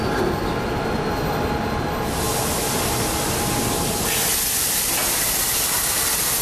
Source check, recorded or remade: recorded